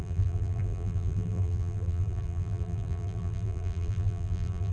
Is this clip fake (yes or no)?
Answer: yes